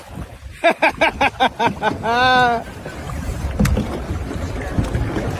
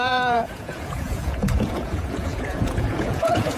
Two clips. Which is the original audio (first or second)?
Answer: first